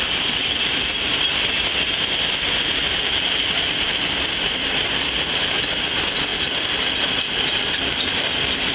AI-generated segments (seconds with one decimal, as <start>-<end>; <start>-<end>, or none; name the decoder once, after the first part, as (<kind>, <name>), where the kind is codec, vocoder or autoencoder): 2.8-3.3 (vocoder, BigVGAN v2); 6.3-8.7

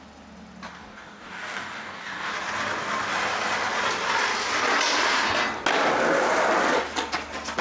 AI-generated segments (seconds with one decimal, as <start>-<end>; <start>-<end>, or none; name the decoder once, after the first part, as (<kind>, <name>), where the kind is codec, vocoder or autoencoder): 0.7-2.3 (codec, DAC)

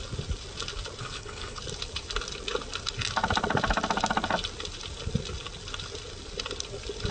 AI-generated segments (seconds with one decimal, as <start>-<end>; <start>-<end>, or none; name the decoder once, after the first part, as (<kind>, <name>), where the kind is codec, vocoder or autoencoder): 1.0-1.6 (codec, HILCodec)

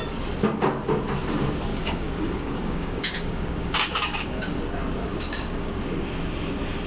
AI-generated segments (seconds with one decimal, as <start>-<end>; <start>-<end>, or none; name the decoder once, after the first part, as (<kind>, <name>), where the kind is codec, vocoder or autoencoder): 1.7-4.6 (codec, DAC); 5.0-5.7

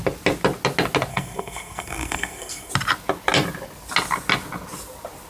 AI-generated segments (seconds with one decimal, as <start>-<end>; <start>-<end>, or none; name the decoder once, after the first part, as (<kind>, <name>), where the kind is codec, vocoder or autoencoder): 1.1-2.7 (codec, SNAC)

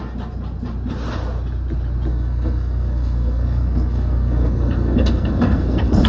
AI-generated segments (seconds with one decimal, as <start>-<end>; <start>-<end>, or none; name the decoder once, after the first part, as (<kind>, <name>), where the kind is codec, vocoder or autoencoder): 2.1-6.1 (codec, SNAC)

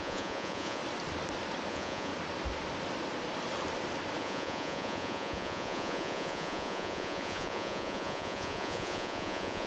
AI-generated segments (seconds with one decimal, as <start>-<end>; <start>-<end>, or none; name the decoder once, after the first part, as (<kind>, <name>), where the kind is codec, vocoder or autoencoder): 0.0-0.8 (vocoder, Vocos); 1.7-2.1; 4.2-9.7